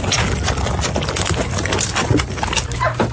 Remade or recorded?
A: recorded